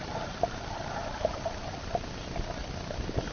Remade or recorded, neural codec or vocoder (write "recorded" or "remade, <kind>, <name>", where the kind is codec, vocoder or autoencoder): recorded